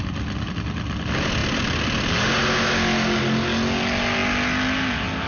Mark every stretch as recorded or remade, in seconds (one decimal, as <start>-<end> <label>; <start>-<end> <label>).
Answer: 0.0-5.3 recorded